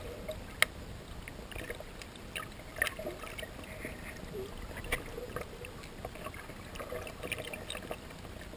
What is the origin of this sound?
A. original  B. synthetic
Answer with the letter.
A